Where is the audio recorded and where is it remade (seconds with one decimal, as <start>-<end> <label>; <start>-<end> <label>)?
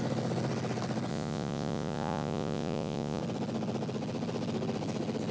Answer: 0.0-1.1 recorded; 1.1-3.2 remade; 3.2-5.3 recorded